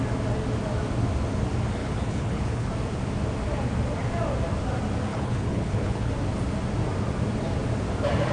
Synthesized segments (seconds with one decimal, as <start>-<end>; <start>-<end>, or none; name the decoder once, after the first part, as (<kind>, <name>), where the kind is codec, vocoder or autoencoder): 1.8-2.7 (codec, HILCodec); 5.1-6.1